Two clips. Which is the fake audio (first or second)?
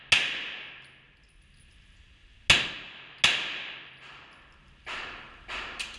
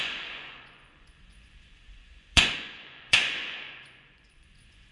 second